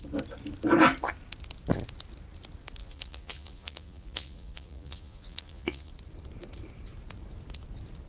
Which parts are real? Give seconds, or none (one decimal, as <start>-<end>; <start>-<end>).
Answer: 0.0-2.8; 5.9-8.1